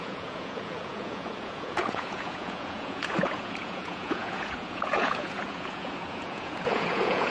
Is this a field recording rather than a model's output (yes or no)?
no